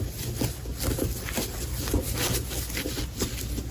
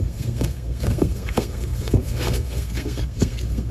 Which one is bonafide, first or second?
first